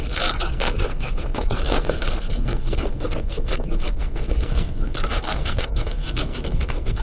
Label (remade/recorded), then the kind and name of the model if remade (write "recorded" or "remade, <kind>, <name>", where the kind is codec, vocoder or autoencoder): remade, codec, SNAC